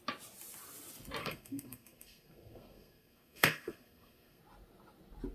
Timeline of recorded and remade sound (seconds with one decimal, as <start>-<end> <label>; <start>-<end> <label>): 0.0-1.2 recorded; 1.2-4.4 remade; 4.4-5.3 recorded